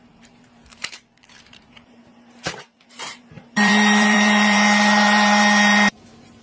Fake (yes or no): yes